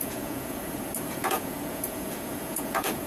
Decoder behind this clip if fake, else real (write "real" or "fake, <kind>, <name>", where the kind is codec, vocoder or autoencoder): fake, vocoder, Vocos